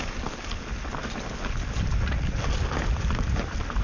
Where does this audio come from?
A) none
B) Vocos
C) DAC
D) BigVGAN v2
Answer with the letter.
A